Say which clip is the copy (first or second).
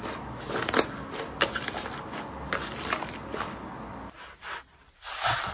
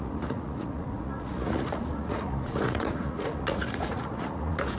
second